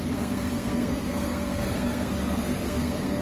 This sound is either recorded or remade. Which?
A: remade